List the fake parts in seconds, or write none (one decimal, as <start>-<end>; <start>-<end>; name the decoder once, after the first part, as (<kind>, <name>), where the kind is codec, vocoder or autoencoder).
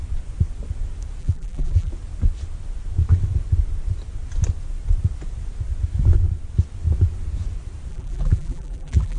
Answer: 1.2-1.9 (vocoder, BigVGAN v2); 7.9-9.2